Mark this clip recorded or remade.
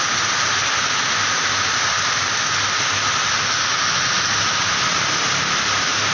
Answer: recorded